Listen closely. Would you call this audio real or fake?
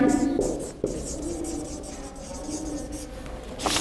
real